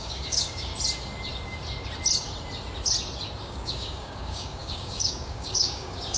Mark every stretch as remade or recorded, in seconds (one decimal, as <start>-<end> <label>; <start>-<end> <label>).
0.0-0.7 remade; 0.7-3.4 recorded; 3.4-6.2 remade